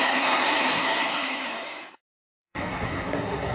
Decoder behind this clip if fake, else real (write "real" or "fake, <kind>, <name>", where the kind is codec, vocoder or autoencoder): fake, codec, SNAC